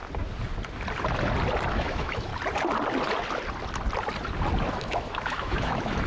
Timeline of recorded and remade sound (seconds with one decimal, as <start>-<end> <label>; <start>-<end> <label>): 0.0-1.7 recorded; 1.7-2.3 remade; 2.3-4.7 recorded; 4.7-6.1 remade